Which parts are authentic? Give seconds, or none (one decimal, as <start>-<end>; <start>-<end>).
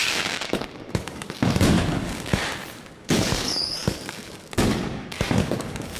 2.4-3.0